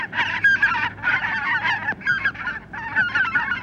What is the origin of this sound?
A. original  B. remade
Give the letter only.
A